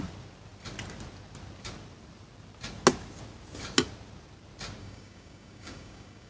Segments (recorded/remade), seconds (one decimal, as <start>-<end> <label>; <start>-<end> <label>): 0.0-4.8 recorded; 4.8-6.3 remade